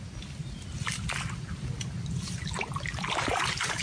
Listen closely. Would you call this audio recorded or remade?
recorded